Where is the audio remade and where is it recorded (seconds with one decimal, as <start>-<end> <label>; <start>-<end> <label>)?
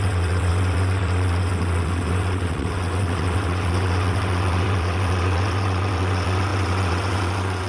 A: 0.0-7.7 remade